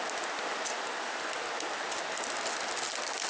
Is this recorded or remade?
recorded